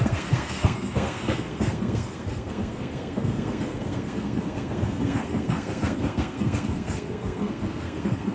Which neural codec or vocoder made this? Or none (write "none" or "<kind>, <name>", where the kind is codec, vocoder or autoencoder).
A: codec, SNAC